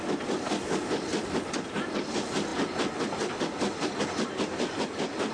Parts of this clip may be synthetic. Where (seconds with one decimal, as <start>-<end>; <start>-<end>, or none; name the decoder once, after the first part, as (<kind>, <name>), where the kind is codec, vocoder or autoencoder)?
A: none